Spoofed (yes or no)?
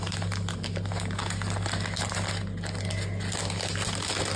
no